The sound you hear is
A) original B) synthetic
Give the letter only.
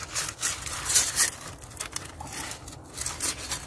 A